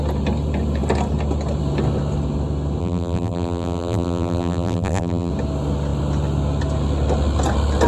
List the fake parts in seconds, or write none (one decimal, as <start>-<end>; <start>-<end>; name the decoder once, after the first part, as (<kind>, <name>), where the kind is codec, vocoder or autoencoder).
2.8-5.3 (vocoder, BigVGAN v2)